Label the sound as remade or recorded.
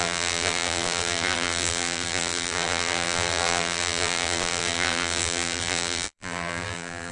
remade